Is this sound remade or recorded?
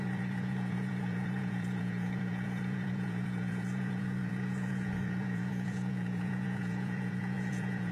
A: remade